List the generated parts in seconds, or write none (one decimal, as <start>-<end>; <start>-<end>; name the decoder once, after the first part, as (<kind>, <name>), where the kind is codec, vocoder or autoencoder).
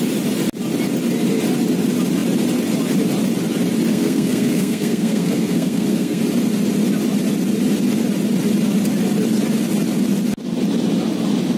3.9-6.2 (codec, SNAC)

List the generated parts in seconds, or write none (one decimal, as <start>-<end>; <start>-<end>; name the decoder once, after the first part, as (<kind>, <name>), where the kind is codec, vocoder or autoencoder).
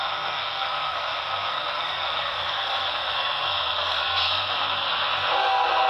0.0-5.1 (codec, SNAC)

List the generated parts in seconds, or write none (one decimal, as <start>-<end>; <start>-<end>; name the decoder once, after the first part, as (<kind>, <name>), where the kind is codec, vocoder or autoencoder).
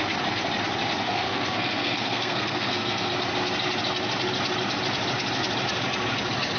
1.0-3.1 (codec, SNAC)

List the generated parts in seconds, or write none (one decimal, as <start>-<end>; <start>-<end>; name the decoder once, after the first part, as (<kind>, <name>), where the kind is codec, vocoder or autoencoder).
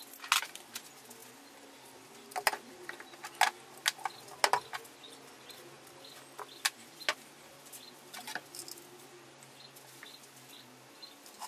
none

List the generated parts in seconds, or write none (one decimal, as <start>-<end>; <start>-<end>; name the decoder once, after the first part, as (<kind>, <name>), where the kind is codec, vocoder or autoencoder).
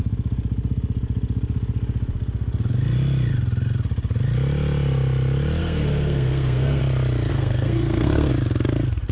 5.6-6.8 (codec, SNAC); 7.3-8.3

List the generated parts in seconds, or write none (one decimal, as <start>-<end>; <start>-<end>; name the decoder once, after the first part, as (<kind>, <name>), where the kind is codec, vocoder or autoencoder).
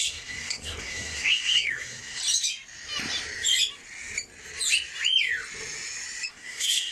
0.0-2.2 (codec, SNAC); 6.3-6.9